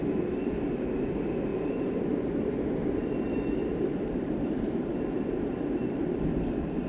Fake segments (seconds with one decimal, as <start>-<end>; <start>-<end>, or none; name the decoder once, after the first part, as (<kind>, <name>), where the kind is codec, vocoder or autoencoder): 1.5-2.2 (vocoder, BigVGAN v2); 3.6-6.5